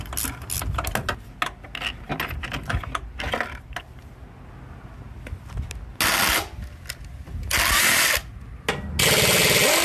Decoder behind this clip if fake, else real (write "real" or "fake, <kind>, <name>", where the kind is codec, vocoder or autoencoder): real